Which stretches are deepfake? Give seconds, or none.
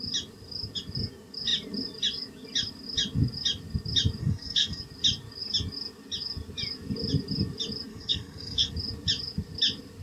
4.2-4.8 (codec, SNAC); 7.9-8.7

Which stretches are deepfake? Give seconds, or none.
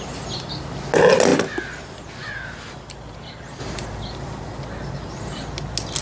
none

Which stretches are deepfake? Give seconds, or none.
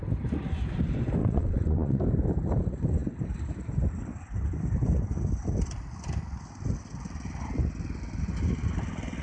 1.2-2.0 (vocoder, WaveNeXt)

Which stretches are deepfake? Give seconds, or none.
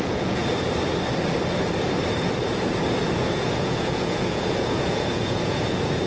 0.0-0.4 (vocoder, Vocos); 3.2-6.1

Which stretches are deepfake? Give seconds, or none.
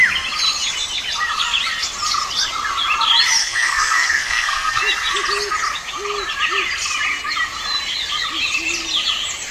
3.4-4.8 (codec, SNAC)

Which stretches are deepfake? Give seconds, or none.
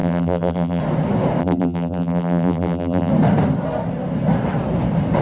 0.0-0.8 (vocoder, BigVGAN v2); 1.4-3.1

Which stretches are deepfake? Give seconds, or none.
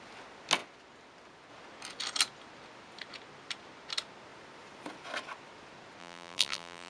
6.0-6.9 (vocoder, BigVGAN v2)